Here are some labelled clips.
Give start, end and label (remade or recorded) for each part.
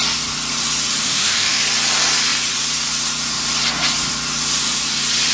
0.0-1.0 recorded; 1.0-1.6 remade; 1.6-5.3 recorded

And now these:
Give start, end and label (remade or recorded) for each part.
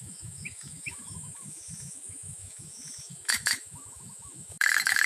0.0-5.1 remade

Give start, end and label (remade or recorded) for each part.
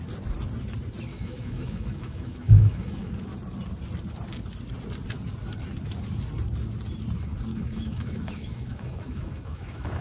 0.0-1.1 recorded; 1.1-3.1 remade; 3.1-7.5 recorded; 7.5-10.0 remade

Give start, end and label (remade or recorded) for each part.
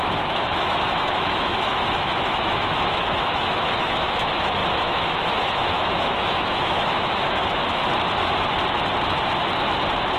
0.0-7.8 remade; 7.8-10.2 recorded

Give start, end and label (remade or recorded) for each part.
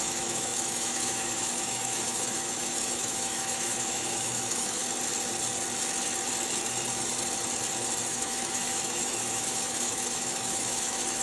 0.0-4.8 remade; 4.8-8.1 recorded; 8.1-11.2 remade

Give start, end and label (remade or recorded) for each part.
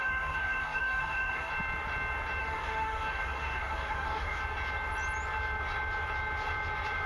0.0-1.5 remade; 1.5-2.4 recorded; 2.4-4.4 remade; 4.4-7.1 recorded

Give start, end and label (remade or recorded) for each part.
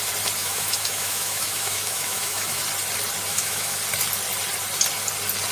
0.0-0.4 recorded; 0.4-2.6 remade; 2.6-3.3 recorded; 3.3-3.8 remade; 3.8-5.5 recorded